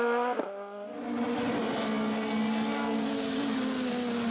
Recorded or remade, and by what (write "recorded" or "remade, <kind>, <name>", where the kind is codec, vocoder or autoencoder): recorded